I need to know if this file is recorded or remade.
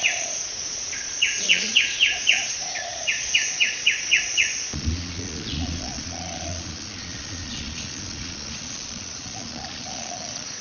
remade